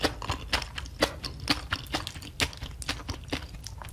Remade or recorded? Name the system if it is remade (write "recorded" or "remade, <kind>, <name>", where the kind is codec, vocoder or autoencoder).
recorded